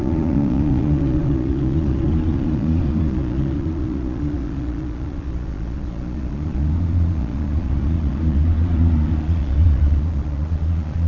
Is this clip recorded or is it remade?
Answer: remade